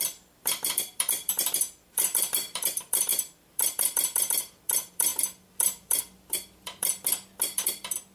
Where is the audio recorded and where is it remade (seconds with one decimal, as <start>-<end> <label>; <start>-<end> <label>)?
0.0-8.1 remade